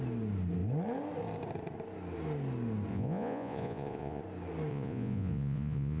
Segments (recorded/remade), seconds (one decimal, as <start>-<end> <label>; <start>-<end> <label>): 0.0-2.9 recorded; 2.9-4.2 remade; 4.2-4.7 recorded; 4.7-6.0 remade